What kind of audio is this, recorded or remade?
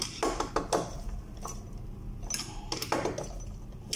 recorded